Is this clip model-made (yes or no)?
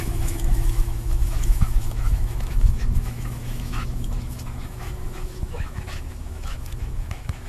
yes